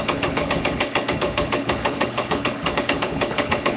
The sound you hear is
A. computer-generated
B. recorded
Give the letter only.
A